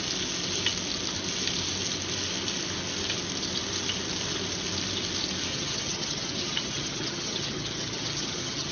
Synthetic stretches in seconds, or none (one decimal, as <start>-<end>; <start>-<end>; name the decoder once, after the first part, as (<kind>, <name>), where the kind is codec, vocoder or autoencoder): 5.5-8.7 (vocoder, HiFi-GAN)